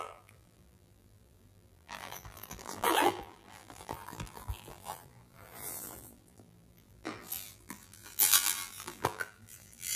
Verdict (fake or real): fake